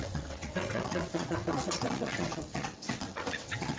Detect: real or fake fake